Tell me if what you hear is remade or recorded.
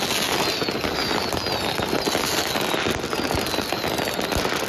recorded